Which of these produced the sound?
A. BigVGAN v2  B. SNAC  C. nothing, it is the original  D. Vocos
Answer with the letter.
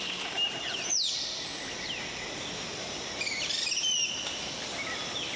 C